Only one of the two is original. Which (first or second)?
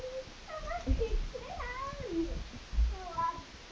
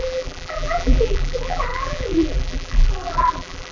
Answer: first